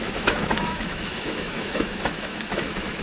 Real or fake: fake